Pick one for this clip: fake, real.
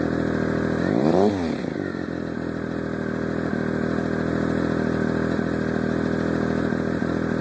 real